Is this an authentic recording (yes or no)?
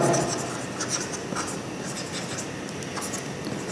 yes